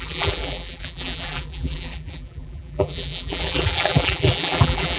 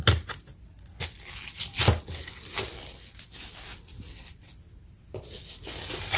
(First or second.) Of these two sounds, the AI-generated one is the first